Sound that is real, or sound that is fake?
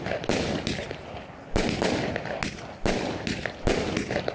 real